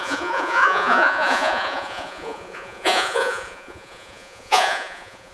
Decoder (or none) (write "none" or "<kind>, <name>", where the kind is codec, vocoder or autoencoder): vocoder, Vocos